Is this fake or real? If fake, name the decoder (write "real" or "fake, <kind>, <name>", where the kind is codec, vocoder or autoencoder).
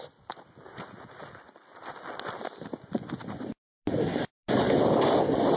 real